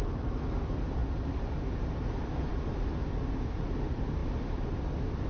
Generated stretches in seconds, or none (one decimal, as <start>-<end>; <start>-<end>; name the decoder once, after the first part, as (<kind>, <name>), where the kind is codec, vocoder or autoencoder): none